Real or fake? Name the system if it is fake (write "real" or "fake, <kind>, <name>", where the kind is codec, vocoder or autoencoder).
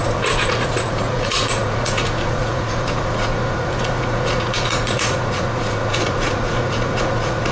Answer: fake, vocoder, Vocos